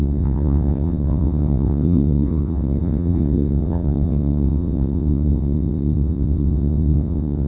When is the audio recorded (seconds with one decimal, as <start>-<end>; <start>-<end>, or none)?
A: none